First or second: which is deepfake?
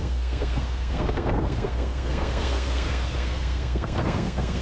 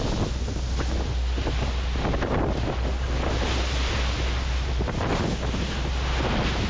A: first